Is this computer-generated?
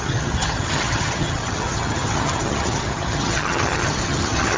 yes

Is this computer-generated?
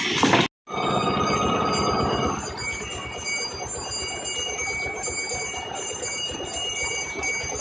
no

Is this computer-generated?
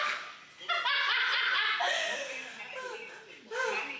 no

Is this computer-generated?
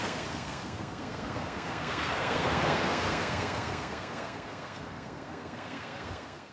yes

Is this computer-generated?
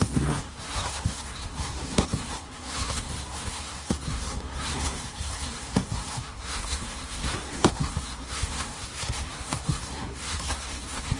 yes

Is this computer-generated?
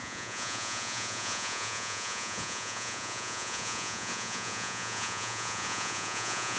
yes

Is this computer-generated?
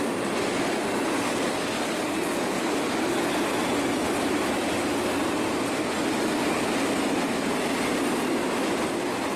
no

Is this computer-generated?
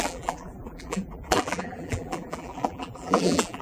yes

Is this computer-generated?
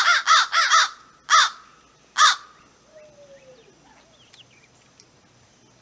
no